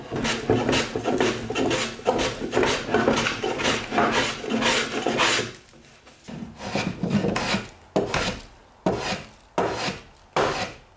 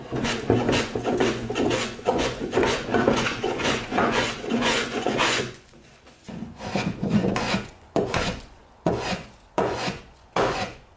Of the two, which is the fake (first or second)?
second